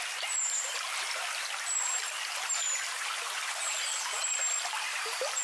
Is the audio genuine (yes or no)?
yes